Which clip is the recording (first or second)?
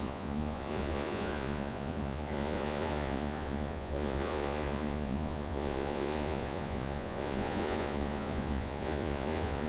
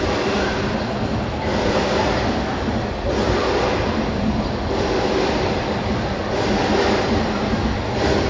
second